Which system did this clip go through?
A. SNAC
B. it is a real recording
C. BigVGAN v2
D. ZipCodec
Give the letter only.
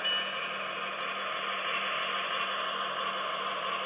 B